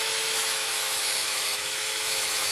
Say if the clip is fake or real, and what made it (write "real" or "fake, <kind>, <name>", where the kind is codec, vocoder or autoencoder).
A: fake, autoencoder, DAC-VAE